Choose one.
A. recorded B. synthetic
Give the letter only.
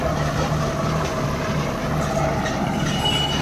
A